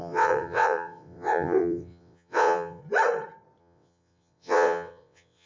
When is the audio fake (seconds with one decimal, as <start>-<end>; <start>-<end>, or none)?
0.0-2.8; 3.6-5.5

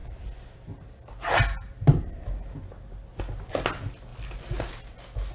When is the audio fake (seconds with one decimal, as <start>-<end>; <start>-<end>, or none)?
none

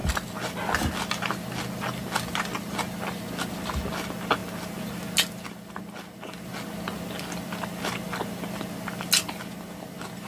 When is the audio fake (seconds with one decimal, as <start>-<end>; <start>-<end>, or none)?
none

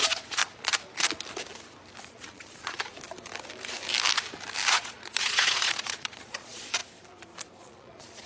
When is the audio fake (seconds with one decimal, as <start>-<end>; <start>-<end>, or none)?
0.0-0.4; 2.0-2.9; 4.7-6.8; 7.6-8.3

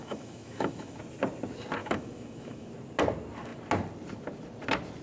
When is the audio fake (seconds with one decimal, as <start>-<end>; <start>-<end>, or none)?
0.0-1.0; 1.8-2.7

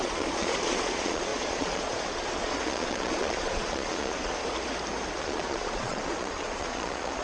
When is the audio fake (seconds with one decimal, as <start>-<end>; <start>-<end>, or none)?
0.0-4.4; 5.2-7.2

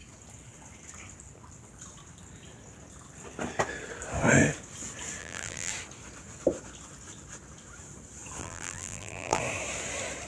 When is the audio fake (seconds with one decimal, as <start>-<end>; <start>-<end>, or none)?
5.2-5.7; 8.4-9.4

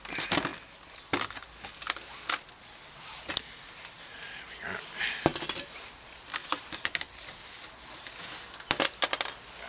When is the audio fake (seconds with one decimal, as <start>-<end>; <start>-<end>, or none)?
6.4-7.4